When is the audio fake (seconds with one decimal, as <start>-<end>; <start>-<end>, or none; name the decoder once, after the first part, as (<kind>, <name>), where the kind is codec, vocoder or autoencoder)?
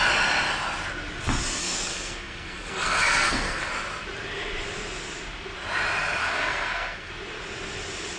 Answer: 1.6-3.7 (codec, SNAC); 6.2-7.1